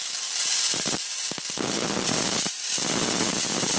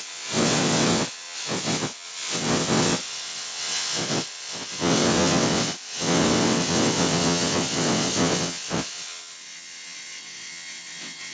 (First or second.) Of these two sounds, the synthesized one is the second